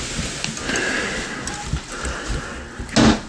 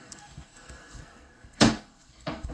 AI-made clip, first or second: second